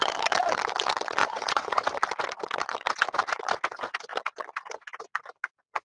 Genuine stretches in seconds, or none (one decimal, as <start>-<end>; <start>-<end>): 0.0-1.2; 1.8-5.8